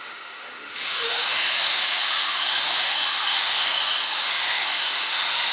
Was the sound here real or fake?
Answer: fake